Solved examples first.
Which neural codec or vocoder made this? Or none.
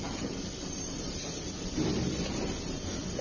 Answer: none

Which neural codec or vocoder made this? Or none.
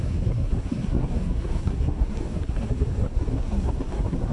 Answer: codec, SNAC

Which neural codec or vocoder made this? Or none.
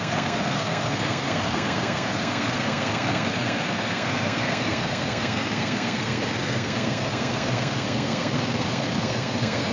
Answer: codec, SNAC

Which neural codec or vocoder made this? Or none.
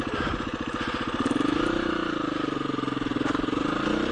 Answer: none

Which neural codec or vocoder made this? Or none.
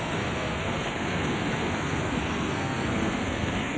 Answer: codec, SNAC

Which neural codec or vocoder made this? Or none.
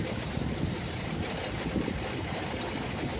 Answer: none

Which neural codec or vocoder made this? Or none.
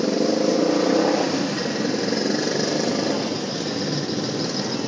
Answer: none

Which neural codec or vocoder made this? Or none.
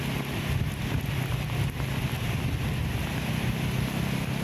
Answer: none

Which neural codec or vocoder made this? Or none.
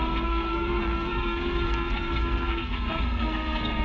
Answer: codec, SNAC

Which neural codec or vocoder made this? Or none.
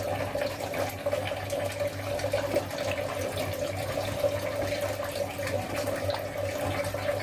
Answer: none